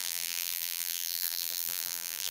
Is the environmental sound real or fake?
fake